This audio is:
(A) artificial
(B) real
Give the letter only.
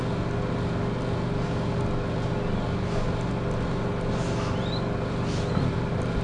B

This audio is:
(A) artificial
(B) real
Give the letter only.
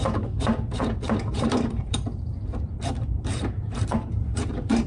A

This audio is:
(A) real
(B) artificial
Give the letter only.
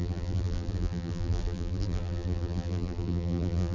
B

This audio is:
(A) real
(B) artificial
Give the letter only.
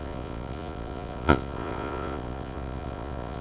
B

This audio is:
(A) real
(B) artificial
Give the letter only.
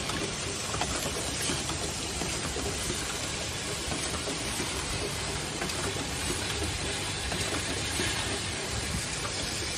B